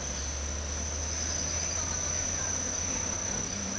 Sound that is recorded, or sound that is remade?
recorded